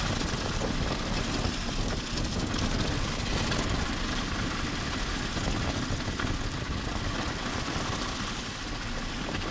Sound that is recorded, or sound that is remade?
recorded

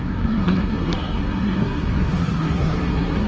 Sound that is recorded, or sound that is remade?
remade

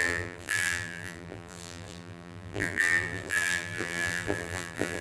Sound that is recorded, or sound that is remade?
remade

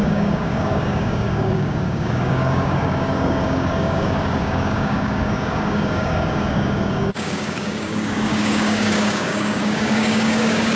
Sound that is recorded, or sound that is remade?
remade